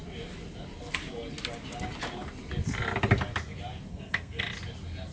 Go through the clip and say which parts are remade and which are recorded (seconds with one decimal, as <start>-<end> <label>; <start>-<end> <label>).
0.0-3.9 recorded; 3.9-4.4 remade; 4.4-5.1 recorded